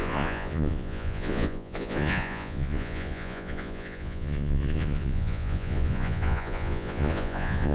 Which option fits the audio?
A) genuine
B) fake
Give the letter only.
B